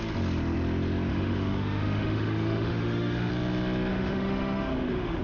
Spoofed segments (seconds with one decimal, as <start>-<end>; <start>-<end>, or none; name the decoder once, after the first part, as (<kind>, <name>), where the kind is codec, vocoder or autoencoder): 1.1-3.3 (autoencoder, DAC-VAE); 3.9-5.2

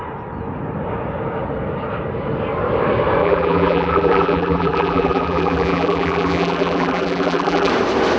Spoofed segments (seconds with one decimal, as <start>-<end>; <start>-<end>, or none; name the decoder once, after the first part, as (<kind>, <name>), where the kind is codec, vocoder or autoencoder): 3.2-7.7 (vocoder, BigVGAN v2)

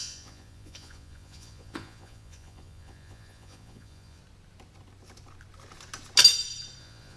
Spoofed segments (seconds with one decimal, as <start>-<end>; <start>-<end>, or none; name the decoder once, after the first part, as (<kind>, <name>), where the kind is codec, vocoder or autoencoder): 0.0-4.2 (vocoder, Vocos); 6.8-7.2

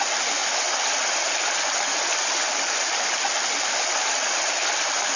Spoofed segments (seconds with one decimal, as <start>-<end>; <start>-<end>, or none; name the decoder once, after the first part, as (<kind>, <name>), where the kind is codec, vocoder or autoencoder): none

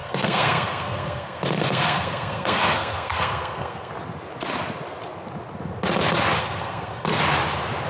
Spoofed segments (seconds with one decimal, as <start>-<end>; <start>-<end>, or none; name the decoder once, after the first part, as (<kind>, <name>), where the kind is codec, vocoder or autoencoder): 0.0-3.9 (codec, SNAC); 6.4-7.1

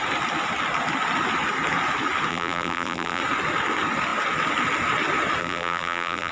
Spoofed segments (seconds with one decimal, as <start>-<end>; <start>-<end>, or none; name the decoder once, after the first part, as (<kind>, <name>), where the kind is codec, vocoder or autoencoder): 2.3-3.2 (vocoder, BigVGAN v2); 5.4-6.3

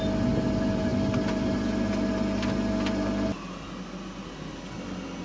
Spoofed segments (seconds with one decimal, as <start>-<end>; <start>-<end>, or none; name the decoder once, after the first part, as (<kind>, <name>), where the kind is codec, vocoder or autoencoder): none